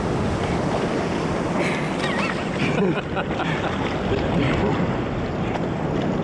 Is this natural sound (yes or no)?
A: yes